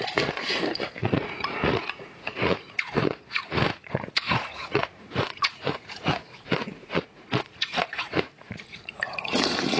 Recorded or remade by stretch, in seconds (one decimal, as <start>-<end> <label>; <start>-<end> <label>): 0.0-9.8 remade